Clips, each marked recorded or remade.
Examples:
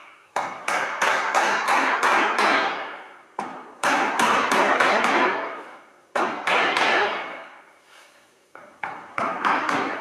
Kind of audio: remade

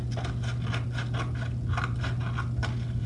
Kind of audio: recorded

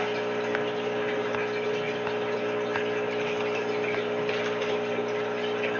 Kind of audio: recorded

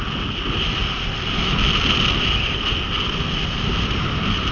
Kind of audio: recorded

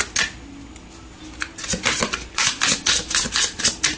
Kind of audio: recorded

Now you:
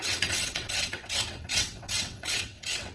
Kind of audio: remade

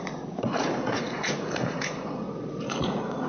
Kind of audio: remade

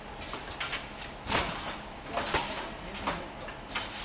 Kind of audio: recorded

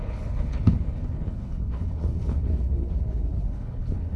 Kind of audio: remade